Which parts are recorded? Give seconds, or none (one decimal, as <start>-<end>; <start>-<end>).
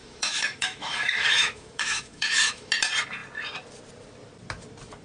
2.7-5.0